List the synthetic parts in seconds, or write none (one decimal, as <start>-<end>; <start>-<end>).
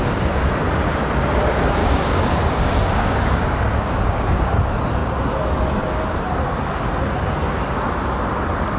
1.8-4.5